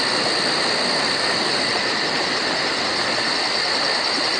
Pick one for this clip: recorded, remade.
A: recorded